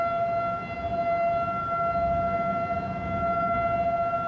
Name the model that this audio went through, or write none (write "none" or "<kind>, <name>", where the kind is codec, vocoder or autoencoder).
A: none